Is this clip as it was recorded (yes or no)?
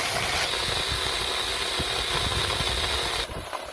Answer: yes